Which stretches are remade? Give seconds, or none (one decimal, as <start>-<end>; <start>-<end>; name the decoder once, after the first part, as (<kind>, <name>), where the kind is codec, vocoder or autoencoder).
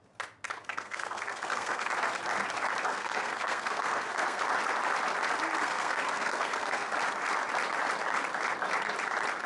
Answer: 0.6-1.9 (codec, SNAC); 2.9-4.4; 5.6-6.9